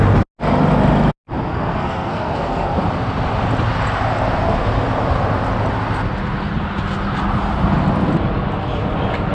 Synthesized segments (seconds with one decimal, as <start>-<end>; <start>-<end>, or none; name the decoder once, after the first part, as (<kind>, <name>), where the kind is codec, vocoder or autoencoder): 1.5-2.8 (codec, SNAC)